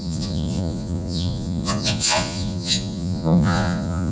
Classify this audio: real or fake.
fake